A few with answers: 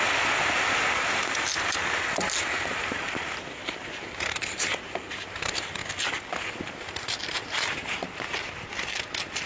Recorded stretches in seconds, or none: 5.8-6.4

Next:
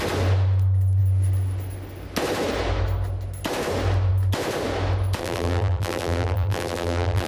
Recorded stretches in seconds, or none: 0.0-5.2